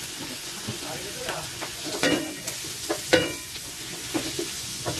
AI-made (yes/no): yes